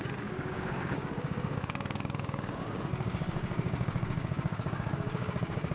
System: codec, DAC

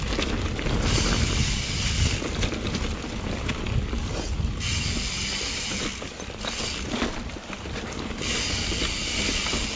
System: none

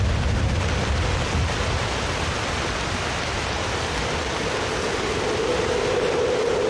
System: none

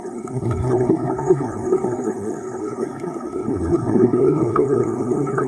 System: codec, SNAC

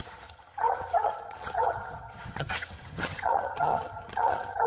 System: vocoder, HiFi-GAN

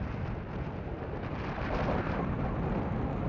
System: none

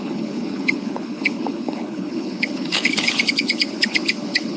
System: codec, HILCodec